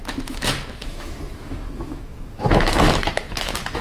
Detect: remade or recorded remade